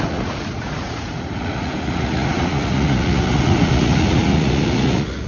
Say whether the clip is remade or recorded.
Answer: remade